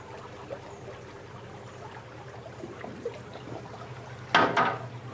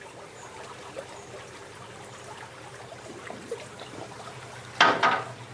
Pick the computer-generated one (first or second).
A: second